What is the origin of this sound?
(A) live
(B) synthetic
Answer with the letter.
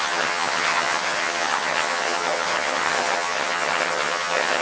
B